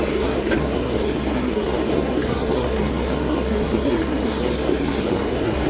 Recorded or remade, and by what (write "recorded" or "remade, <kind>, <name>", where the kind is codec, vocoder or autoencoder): remade, codec, SNAC